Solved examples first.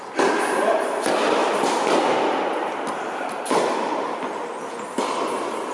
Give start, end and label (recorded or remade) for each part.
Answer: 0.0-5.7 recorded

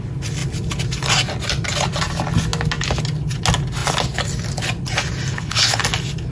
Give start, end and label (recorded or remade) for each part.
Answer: 0.0-5.3 recorded; 5.3-5.8 remade; 5.8-6.3 recorded

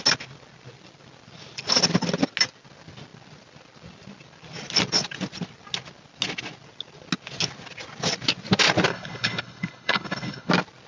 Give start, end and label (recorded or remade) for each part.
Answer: 0.0-8.9 recorded; 8.9-10.5 remade; 10.5-10.9 recorded

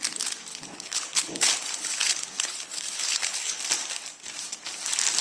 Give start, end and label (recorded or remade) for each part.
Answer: 0.0-0.5 recorded; 0.5-3.6 remade; 3.6-5.2 recorded